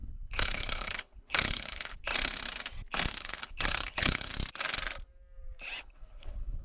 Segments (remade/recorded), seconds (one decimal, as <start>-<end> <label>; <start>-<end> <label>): 0.0-2.1 remade; 2.1-3.1 recorded; 3.1-4.3 remade; 4.3-5.8 recorded; 5.8-6.6 remade